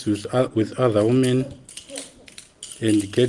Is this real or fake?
real